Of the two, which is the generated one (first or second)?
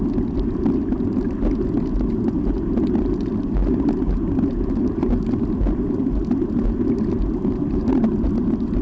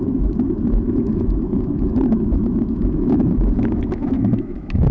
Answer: second